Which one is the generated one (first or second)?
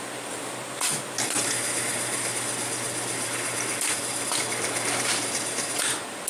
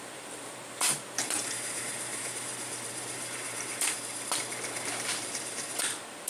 second